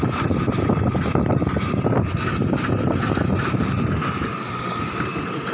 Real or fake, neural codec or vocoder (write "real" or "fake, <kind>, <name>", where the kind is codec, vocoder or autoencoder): real